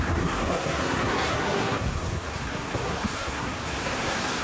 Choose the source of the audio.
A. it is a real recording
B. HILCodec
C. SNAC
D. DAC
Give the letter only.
C